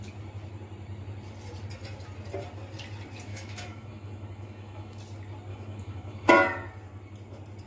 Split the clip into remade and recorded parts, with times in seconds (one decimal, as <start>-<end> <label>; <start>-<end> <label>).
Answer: 0.0-3.3 recorded; 3.3-5.0 remade; 5.0-5.5 recorded; 5.5-6.3 remade; 6.3-7.7 recorded